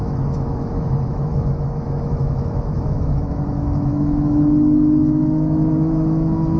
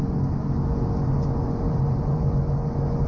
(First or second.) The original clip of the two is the second